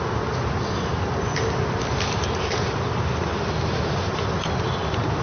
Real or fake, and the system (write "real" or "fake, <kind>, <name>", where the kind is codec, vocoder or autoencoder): real